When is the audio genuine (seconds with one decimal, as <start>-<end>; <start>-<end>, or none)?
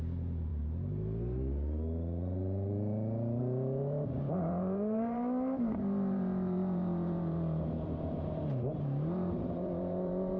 0.5-3.4